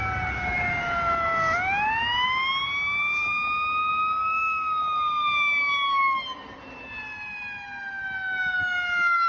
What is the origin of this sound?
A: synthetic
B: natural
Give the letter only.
B